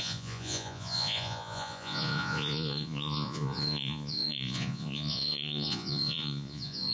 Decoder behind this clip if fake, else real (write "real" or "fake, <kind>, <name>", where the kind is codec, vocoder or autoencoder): fake, vocoder, Vocos